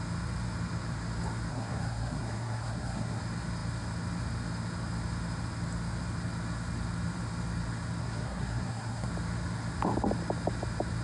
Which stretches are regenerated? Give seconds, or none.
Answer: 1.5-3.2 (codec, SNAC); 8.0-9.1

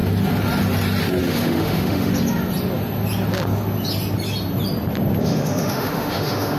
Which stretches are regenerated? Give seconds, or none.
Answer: 1.2-2.1 (autoencoder, DAC-VAE); 5.2-6.6

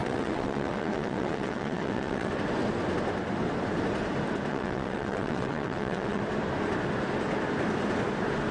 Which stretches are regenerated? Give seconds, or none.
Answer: 0.0-2.3 (vocoder, WaveNeXt); 4.5-6.2

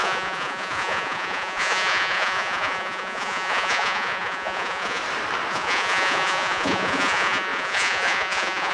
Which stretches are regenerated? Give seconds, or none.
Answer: 0.0-5.0 (vocoder, Vocos); 5.5-8.7

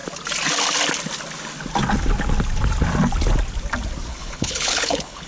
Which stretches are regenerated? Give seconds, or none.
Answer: 4.1-5.3 (codec, HILCodec)